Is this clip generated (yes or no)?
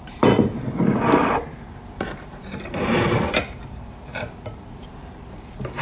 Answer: yes